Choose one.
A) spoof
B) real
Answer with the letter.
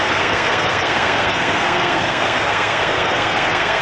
A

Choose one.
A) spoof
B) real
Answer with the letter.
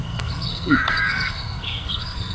A